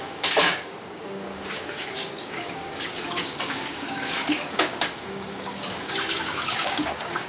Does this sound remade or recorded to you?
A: remade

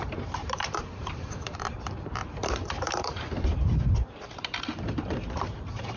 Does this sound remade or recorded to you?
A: remade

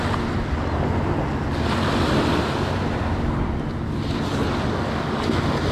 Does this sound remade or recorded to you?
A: recorded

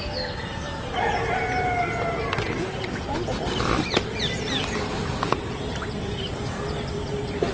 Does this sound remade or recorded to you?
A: recorded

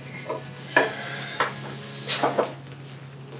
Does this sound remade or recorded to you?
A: recorded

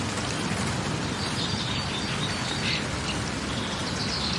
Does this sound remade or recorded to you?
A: recorded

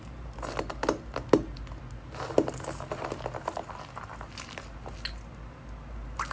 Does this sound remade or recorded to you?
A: recorded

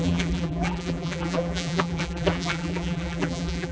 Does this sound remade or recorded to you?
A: remade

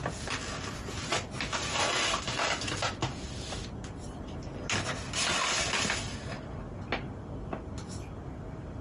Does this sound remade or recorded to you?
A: recorded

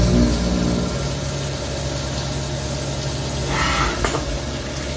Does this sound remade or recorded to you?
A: recorded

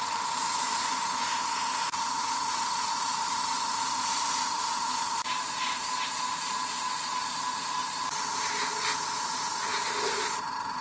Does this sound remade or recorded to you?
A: remade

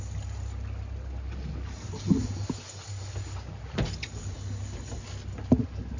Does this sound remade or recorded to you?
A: recorded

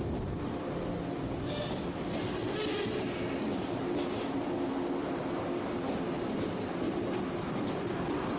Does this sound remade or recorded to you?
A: recorded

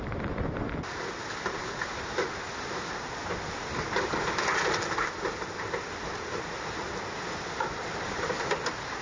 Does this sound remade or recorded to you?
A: recorded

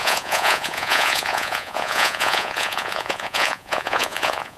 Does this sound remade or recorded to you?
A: remade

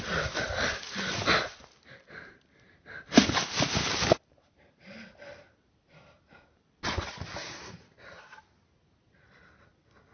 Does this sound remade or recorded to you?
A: recorded